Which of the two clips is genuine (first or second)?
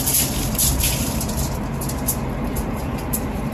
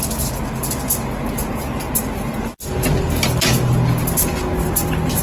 second